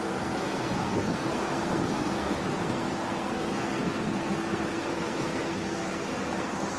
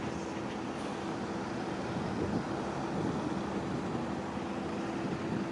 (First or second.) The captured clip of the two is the second